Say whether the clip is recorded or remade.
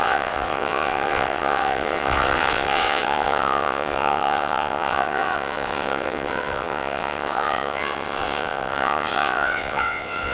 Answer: remade